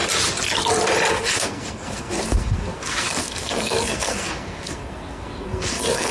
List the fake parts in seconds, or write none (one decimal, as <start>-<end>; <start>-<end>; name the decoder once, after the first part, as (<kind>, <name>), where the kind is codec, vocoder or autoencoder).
1.1-6.1 (codec, SNAC)